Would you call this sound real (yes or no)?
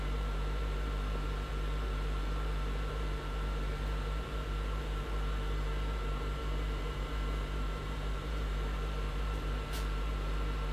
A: no